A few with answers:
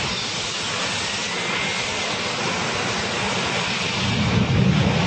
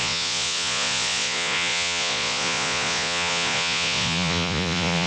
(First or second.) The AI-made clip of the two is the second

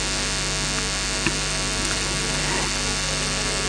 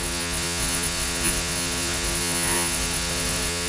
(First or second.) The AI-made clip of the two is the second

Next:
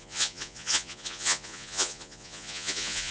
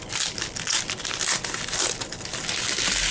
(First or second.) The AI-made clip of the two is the first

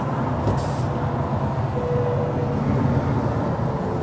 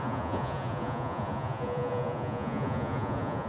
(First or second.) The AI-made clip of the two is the second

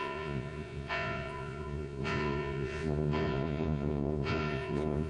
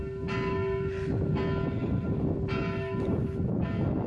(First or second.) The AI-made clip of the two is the first